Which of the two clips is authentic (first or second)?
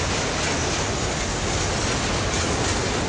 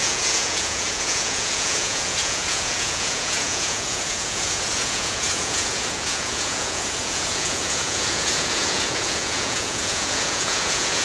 first